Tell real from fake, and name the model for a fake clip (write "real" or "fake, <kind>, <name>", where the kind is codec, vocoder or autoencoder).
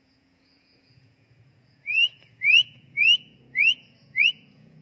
fake, vocoder, Vocos